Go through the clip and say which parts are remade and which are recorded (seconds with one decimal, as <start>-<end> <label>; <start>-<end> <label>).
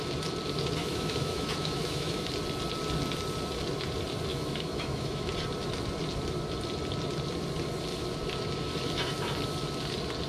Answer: 0.0-0.8 recorded; 0.8-2.3 remade; 2.3-4.3 recorded; 4.3-5.3 remade; 5.3-10.3 recorded